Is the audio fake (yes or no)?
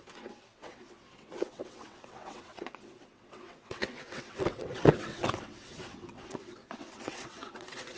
yes